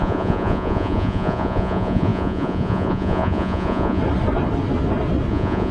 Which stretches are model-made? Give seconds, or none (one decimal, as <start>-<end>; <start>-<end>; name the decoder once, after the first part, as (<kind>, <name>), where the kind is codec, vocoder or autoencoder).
0.0-4.0 (vocoder, Vocos); 5.3-5.7